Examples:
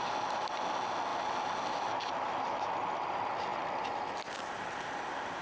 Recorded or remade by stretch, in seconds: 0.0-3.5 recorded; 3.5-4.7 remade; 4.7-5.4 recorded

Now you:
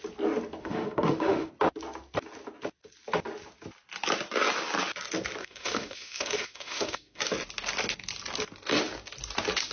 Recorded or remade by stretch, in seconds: 0.0-0.6 recorded; 0.6-1.5 remade; 1.5-5.4 recorded; 5.4-7.2 remade; 7.2-9.7 recorded

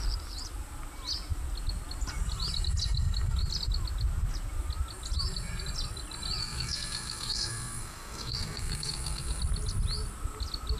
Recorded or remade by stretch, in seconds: 0.0-6.4 recorded; 6.4-9.4 remade; 9.4-10.8 recorded